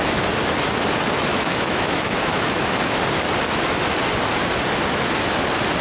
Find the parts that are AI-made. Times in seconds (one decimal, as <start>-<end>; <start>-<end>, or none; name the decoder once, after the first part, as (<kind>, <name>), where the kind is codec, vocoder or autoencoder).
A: 1.3-3.0 (autoencoder, DAC-VAE)